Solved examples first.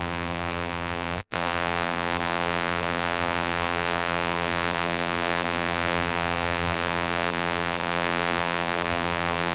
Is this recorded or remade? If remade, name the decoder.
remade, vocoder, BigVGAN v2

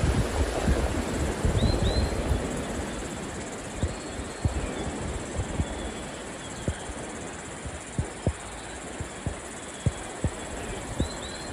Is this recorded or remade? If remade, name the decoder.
recorded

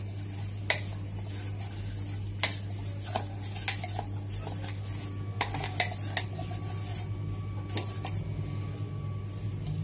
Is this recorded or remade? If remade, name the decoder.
recorded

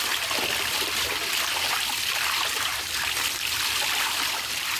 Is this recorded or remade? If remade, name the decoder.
remade, vocoder, BigVGAN v2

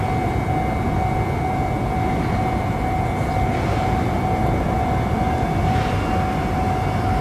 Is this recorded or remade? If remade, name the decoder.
recorded